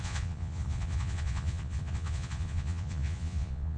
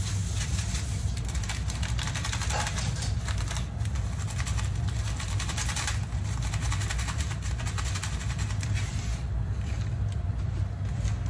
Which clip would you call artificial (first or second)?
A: first